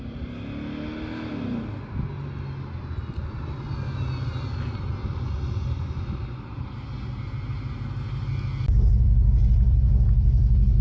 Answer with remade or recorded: recorded